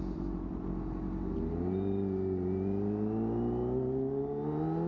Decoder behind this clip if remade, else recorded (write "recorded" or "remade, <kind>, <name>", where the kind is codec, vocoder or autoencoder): recorded